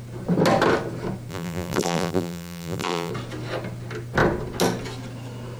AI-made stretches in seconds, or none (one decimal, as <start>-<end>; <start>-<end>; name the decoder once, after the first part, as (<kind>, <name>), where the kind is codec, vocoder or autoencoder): 1.3-3.1 (vocoder, BigVGAN v2)